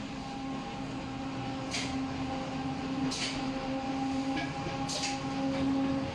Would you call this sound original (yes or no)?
yes